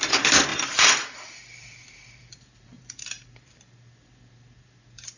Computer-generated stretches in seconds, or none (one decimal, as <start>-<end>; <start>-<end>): 0.5-3.6